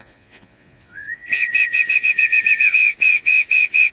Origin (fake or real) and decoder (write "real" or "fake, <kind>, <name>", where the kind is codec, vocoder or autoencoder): fake, vocoder, Vocos